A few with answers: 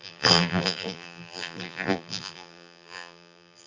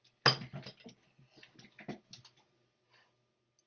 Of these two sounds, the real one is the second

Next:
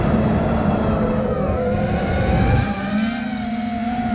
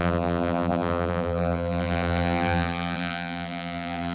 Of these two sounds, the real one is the first